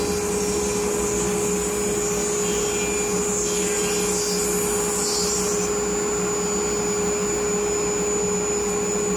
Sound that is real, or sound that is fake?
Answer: real